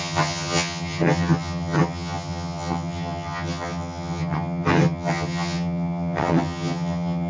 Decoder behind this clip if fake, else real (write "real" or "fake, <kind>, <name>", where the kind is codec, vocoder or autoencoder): fake, vocoder, HiFi-GAN